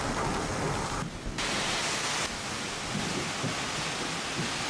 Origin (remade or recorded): recorded